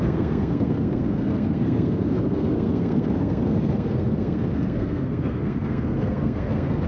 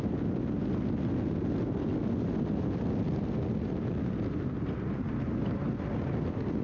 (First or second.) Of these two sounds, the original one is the second